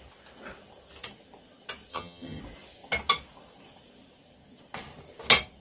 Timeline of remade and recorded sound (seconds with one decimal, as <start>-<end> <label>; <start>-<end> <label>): 0.0-1.9 recorded; 1.9-2.4 remade; 2.4-5.6 recorded